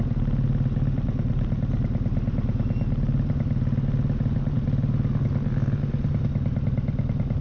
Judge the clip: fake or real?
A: real